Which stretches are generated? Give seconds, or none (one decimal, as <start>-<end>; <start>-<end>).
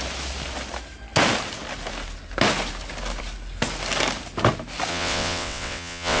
4.9-6.2